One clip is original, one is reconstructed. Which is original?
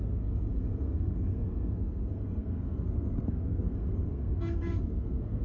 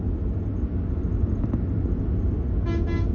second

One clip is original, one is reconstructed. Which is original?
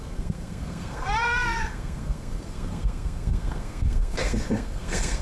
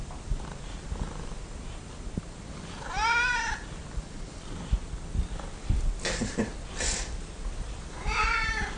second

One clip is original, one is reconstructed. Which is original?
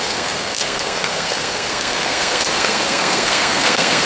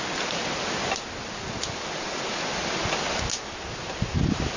second